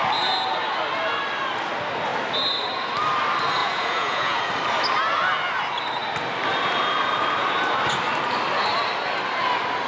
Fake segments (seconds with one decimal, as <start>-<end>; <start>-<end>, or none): 3.6-4.5

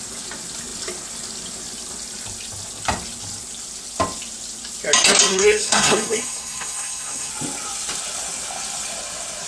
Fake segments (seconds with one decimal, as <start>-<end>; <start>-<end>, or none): 5.3-7.3

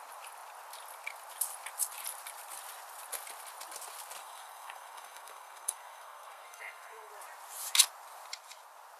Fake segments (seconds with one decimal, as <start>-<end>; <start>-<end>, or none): 4.2-7.1

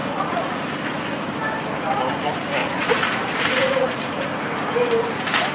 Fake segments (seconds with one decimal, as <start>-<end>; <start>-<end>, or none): 0.0-0.6; 2.6-4.3

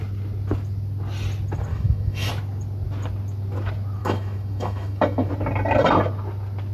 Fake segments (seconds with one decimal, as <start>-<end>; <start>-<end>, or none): 1.7-2.3; 4.0-5.3

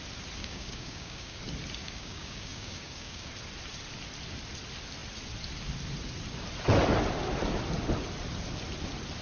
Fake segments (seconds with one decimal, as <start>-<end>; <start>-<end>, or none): 0.4-1.4; 1.8-3.3

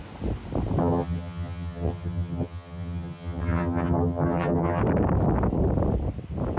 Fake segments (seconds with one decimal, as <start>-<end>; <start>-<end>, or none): 0.8-4.8